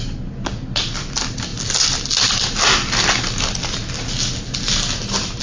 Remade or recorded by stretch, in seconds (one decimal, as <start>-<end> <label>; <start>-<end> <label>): 0.0-5.4 recorded